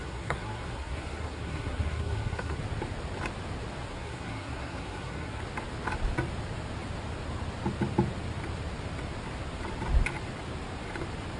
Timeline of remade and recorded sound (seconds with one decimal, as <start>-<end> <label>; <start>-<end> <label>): 0.0-2.6 remade; 2.6-3.9 recorded; 3.9-5.4 remade; 5.4-11.4 recorded